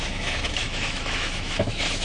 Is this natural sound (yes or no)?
no